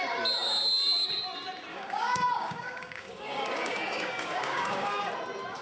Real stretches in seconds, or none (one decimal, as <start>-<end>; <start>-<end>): 0.0-1.7; 5.1-5.6